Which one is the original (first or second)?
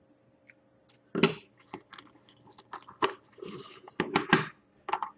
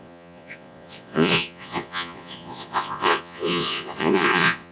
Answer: first